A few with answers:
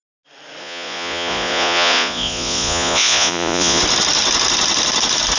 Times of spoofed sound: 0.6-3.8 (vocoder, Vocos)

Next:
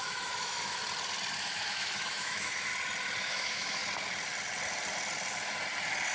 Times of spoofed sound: 0.0-0.8 (autoencoder, DAC-VAE); 1.4-2.7; 3.2-3.8

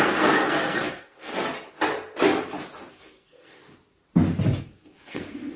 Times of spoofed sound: 0.0-1.3 (codec, SNAC); 2.9-3.6; 4.6-5.6

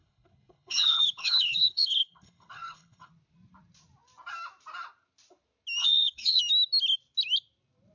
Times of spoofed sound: 0.0-3.1 (codec, HILCodec); 5.8-6.4

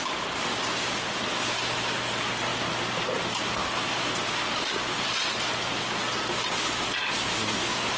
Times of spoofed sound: none

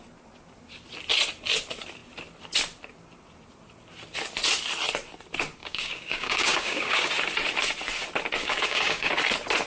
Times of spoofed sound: 5.6-7.1 (codec, DAC); 8.4-9.1

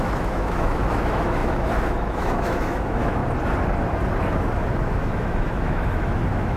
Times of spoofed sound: 0.0-3.2 (autoencoder, DAC-VAE); 4.3-6.6

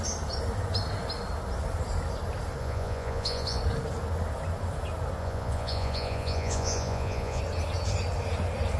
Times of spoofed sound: 2.6-3.6 (vocoder, Vocos); 5.2-7.4